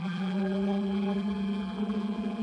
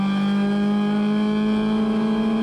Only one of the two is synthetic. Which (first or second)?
first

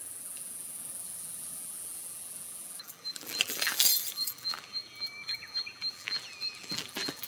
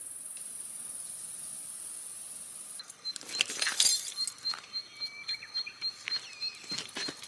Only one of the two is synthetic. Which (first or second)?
first